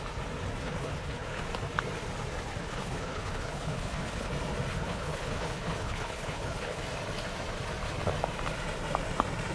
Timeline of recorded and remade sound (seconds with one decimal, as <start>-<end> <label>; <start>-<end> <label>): 0.0-0.6 recorded; 0.6-1.4 remade; 1.4-2.6 recorded; 2.6-4.3 remade; 4.3-4.7 recorded; 4.7-6.8 remade; 6.8-9.5 recorded